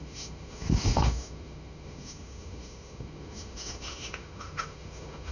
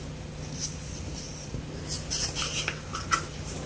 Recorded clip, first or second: second